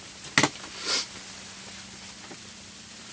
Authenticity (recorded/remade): recorded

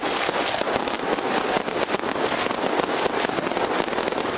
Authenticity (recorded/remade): recorded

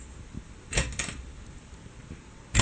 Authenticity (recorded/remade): recorded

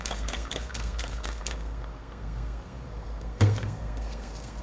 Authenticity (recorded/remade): remade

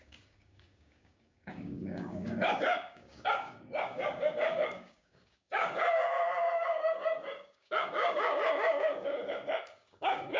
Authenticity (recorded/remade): remade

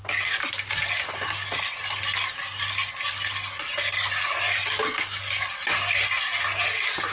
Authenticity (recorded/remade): recorded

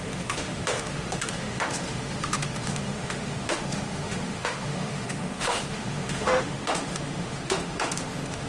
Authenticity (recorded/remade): remade